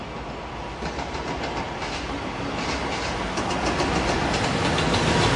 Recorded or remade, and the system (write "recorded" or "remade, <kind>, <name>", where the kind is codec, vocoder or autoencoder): recorded